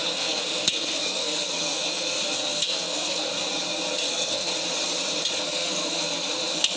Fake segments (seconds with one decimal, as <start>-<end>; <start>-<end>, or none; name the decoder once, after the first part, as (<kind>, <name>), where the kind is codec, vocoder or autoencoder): 0.0-3.3 (codec, SNAC); 4.1-4.5; 5.4-6.8